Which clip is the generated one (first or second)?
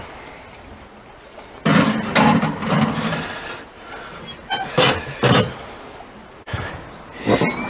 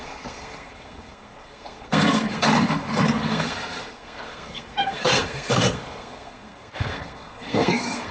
second